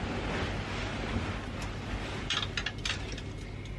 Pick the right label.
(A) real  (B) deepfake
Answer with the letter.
A